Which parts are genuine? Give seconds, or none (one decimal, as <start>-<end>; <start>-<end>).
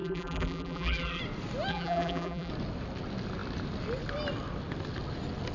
1.2-1.7; 2.5-5.5